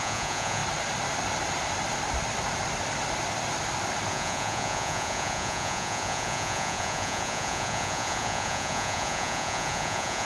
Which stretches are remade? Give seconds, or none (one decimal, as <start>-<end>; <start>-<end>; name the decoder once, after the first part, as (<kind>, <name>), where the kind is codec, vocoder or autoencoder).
0.0-0.6 (vocoder, Vocos); 4.1-10.3